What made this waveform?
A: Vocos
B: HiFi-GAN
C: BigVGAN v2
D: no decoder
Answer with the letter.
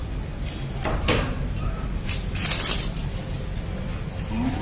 D